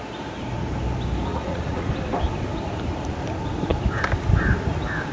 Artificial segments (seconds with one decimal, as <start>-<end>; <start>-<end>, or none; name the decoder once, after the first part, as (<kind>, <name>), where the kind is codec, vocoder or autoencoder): 1.3-1.9 (vocoder, Vocos)